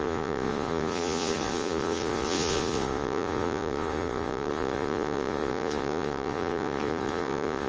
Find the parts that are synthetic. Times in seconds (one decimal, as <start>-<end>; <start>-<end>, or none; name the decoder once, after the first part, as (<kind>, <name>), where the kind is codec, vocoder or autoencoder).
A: 0.0-7.7 (vocoder, Vocos)